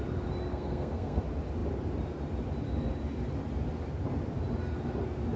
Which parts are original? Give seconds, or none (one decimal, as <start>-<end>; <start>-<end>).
0.0-0.5; 1.2-5.4